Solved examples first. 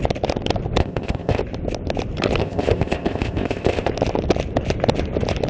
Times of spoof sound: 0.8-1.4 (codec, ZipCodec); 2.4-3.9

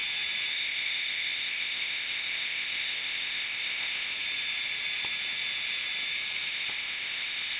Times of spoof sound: 0.5-4.1 (codec, ZipCodec); 6.5-7.6

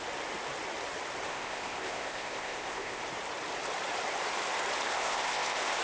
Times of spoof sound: 1.3-3.0 (codec, ZipCodec); 4.9-5.8

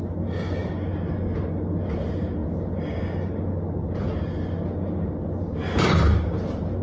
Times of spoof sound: none